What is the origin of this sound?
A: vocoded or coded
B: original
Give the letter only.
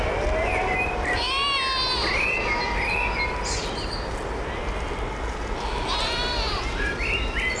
B